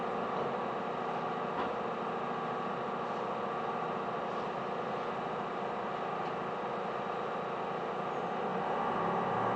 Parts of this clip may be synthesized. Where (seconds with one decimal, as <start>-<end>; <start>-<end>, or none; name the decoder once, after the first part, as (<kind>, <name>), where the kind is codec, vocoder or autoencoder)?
none